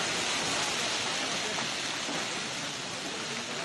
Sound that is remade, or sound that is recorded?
recorded